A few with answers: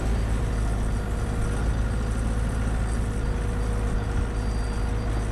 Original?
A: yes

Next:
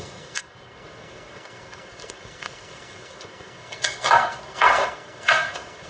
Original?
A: no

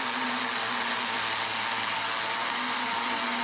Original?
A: yes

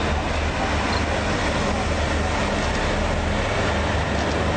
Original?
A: yes